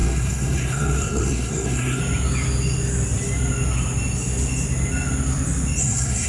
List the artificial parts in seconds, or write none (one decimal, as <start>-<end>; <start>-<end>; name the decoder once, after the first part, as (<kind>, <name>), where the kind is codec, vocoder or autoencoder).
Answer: 0.0-2.0 (codec, SNAC); 5.8-6.3